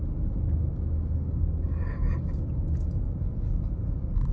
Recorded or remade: recorded